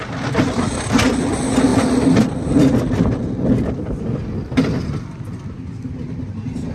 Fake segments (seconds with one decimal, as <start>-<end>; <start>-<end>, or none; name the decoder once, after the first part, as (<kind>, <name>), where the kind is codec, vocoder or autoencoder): none